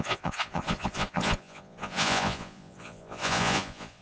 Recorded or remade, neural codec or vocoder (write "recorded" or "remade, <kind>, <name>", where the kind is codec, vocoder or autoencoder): remade, vocoder, Vocos